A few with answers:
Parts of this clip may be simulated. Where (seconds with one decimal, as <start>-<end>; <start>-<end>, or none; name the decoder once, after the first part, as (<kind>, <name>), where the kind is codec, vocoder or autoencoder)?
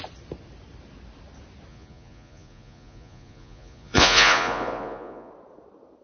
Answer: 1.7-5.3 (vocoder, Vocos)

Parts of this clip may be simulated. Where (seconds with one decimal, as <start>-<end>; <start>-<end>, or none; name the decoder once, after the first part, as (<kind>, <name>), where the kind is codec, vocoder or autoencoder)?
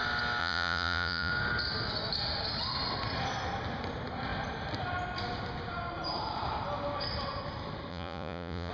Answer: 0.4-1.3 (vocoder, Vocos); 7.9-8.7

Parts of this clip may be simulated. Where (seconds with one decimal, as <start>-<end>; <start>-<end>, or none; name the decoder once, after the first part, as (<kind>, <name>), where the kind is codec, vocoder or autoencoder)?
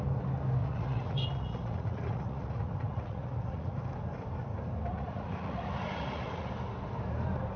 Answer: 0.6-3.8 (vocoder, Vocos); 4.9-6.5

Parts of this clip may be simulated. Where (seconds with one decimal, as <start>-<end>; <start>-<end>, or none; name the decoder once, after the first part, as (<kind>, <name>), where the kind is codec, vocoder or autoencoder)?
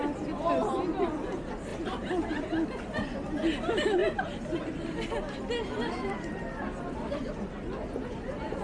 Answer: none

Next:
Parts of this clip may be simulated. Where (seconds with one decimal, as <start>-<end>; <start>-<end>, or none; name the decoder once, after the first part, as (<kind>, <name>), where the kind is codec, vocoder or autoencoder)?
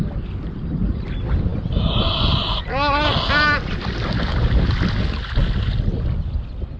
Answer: none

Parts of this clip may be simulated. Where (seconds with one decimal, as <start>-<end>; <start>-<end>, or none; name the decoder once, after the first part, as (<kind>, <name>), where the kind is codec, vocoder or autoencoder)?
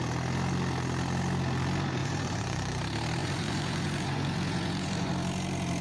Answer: 2.0-2.8 (vocoder, Vocos); 3.2-5.1